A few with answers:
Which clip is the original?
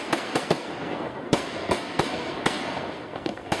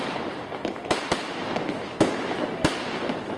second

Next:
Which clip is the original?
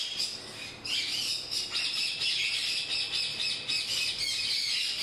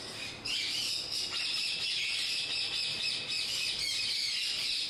first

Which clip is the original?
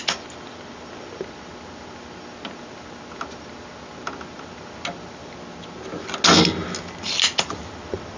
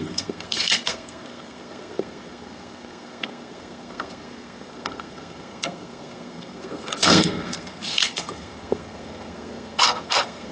first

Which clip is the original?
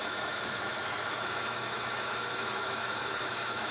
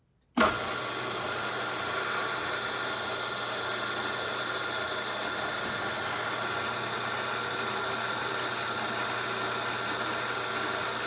second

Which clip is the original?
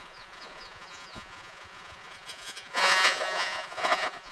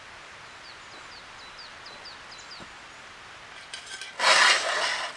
second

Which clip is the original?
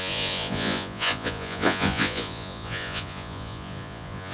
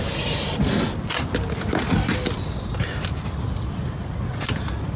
second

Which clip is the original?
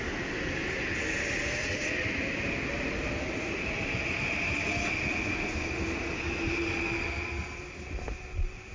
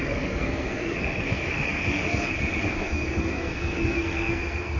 first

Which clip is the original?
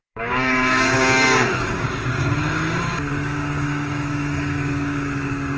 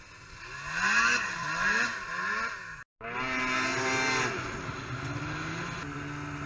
second